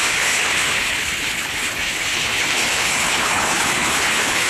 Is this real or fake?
fake